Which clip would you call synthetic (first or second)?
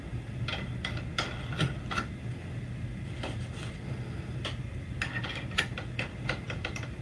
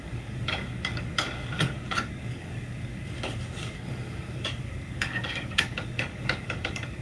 second